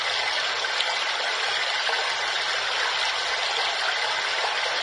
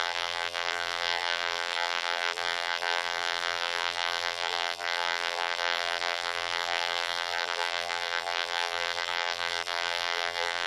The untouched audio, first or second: first